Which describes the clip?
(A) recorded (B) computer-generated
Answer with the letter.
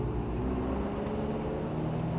A